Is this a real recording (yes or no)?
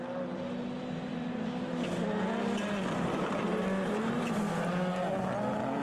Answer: yes